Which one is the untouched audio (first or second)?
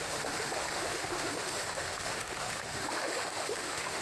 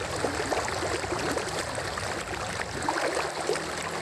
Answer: second